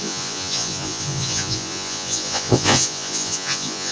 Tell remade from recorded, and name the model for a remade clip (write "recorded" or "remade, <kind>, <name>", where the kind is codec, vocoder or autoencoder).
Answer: remade, vocoder, Vocos